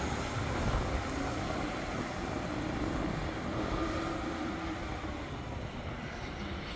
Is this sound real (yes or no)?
yes